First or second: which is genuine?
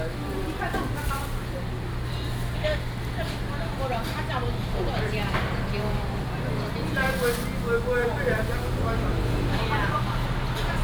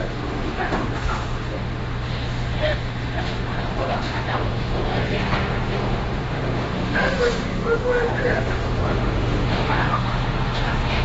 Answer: first